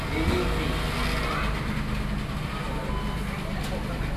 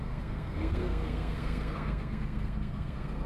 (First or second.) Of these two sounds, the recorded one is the first